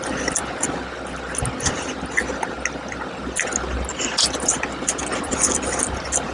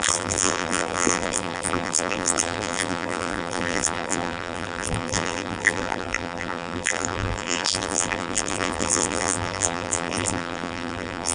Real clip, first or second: first